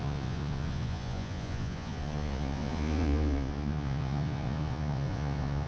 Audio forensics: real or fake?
fake